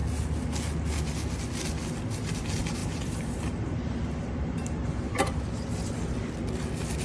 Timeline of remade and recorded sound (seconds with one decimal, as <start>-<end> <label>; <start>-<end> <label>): 0.0-2.8 recorded; 2.8-5.4 remade; 5.4-7.0 recorded